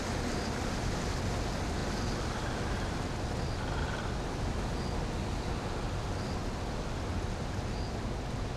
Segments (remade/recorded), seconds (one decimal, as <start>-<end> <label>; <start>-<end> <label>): 0.0-8.6 recorded